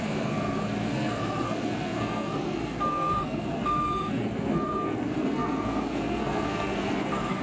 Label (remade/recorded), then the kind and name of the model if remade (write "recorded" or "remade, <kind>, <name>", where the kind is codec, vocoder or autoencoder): remade, codec, SNAC